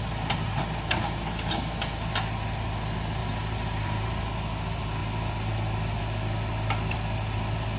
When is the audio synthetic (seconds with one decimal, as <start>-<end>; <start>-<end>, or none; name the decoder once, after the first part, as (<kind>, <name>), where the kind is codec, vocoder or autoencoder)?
3.2-4.3 (vocoder, BigVGAN v2)